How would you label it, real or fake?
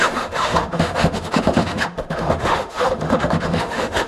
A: fake